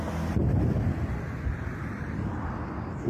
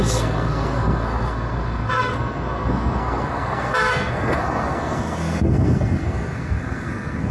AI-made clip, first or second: second